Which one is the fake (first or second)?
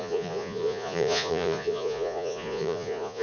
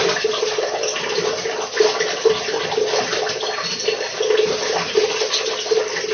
first